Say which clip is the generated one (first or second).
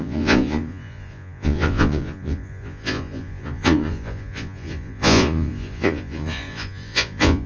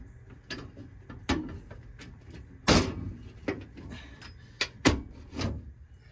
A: first